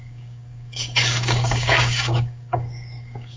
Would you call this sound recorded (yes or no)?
no